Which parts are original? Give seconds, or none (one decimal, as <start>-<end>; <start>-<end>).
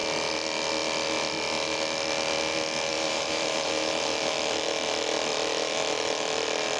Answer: 0.0-2.9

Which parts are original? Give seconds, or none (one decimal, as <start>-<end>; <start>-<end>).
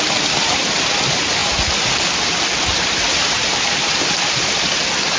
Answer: 0.0-1.4; 4.5-5.2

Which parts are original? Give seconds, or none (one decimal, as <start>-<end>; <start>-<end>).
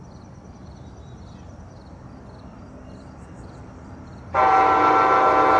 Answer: 4.1-5.6